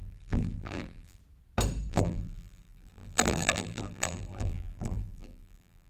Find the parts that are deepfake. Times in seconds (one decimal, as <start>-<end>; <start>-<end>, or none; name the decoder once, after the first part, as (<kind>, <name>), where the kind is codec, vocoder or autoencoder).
0.0-1.2 (vocoder, BigVGAN v2); 1.9-5.9